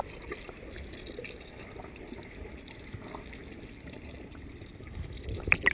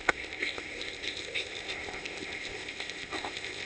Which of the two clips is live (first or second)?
first